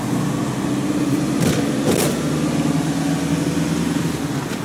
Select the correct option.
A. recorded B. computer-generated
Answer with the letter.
A